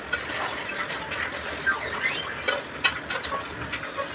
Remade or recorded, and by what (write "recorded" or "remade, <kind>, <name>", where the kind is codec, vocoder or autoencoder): recorded